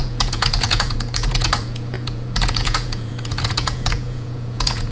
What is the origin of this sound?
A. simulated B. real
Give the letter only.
A